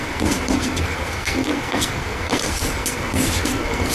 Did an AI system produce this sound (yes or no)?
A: yes